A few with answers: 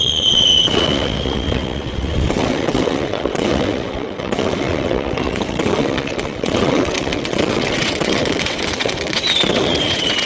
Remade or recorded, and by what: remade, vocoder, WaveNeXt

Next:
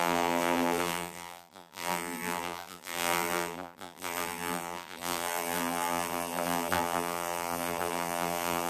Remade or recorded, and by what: remade, vocoder, BigVGAN v2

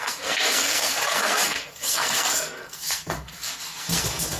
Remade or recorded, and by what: remade, codec, SNAC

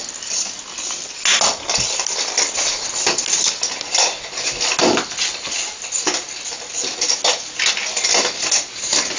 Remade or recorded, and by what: recorded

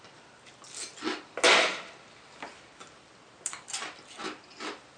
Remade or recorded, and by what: recorded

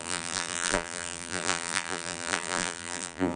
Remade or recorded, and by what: remade, vocoder, BigVGAN v2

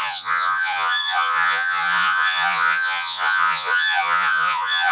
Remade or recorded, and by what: remade, vocoder, Vocos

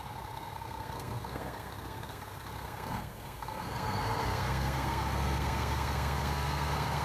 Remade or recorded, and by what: remade, codec, SNAC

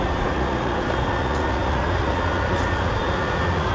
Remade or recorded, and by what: remade, vocoder, Vocos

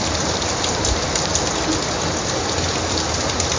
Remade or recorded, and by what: recorded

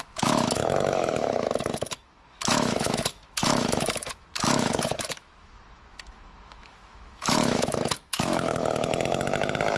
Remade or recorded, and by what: remade, autoencoder, DAC-VAE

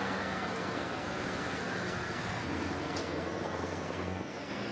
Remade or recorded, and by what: remade, codec, SNAC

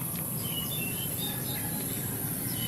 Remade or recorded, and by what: recorded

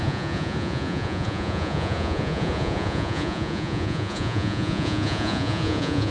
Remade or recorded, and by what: remade, vocoder, Vocos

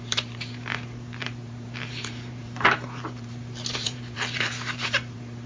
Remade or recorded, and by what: remade, vocoder, BigVGAN v2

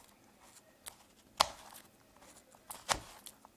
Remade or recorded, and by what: recorded